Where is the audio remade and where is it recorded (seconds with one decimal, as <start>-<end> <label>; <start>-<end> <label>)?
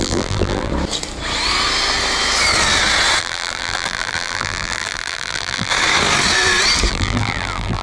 0.0-0.7 remade; 0.7-3.2 recorded; 3.2-5.7 remade; 5.7-6.9 recorded; 6.9-7.8 remade